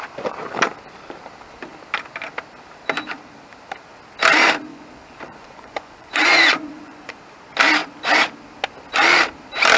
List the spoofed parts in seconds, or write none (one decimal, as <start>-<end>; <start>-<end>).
4.7-7.2

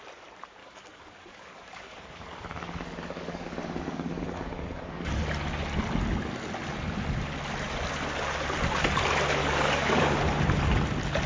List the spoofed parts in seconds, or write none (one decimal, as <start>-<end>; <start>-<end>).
0.6-5.1; 9.4-10.2

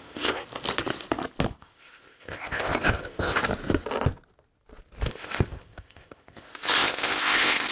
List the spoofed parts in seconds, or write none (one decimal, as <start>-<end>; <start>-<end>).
0.0-0.4; 1.6-3.4; 5.1-7.7

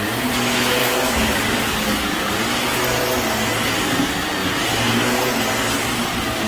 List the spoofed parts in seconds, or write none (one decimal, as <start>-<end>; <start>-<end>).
0.8-2.3

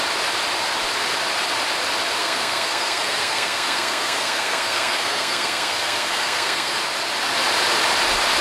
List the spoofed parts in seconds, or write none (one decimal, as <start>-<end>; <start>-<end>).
2.2-6.8